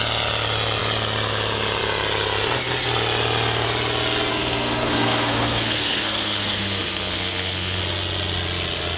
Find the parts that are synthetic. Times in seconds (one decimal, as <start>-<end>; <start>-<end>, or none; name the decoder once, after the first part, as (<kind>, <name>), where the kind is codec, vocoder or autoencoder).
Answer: 4.3-7.8 (codec, SNAC)